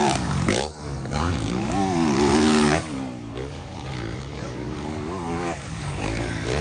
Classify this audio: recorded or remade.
remade